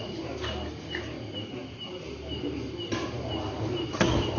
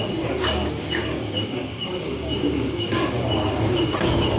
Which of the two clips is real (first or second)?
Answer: first